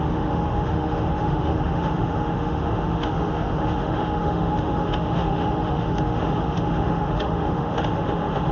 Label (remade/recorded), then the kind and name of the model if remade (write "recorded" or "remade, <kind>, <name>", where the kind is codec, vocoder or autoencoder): remade, autoencoder, DAC-VAE